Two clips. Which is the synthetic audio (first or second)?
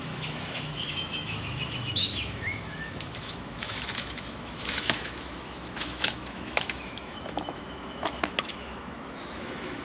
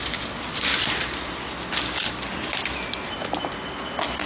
first